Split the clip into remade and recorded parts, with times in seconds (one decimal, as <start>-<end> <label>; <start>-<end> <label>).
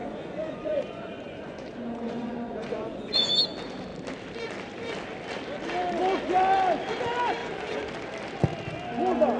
0.0-3.3 remade; 3.3-7.4 recorded; 7.4-7.9 remade; 7.9-9.4 recorded